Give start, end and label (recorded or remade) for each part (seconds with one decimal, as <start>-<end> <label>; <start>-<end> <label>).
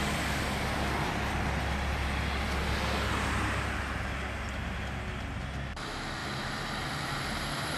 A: 0.0-6.2 recorded; 6.2-7.8 remade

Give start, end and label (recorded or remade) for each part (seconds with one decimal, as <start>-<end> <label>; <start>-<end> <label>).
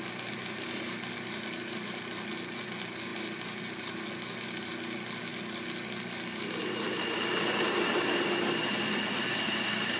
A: 0.0-10.0 recorded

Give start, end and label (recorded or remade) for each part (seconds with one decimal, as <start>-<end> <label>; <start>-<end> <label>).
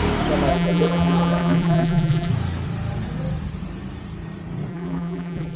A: 0.0-0.5 recorded; 0.5-2.3 remade; 2.3-4.7 recorded; 4.7-5.6 remade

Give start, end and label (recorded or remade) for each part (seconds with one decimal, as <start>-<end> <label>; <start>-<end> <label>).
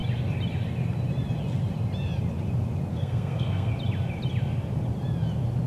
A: 0.0-2.9 recorded; 2.9-3.7 remade; 3.7-5.7 recorded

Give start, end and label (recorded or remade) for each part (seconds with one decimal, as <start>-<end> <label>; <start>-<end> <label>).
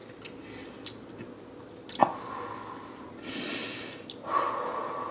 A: 0.0-5.1 recorded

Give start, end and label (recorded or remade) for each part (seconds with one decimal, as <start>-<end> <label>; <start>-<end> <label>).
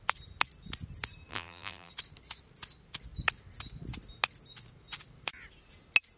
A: 0.0-1.3 recorded; 1.3-1.9 remade; 1.9-6.2 recorded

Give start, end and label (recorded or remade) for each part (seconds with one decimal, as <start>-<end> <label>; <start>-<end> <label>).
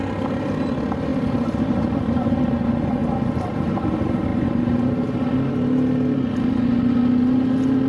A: 0.0-1.1 recorded; 1.1-2.5 remade; 2.5-7.9 recorded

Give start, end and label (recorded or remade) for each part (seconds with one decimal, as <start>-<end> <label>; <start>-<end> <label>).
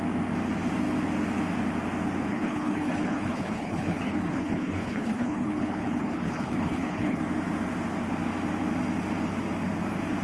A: 0.0-2.3 recorded; 2.3-7.2 remade; 7.2-10.2 recorded